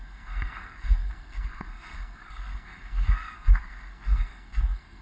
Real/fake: fake